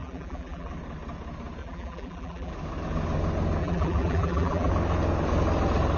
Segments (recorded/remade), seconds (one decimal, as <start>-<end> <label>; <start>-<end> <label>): 0.0-0.7 remade; 0.7-1.6 recorded; 1.6-2.5 remade; 2.5-3.6 recorded; 3.6-4.7 remade; 4.7-6.0 recorded